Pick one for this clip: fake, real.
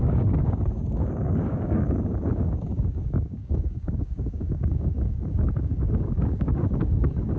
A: fake